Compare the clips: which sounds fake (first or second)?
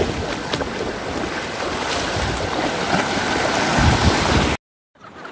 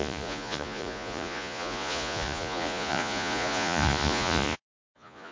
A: second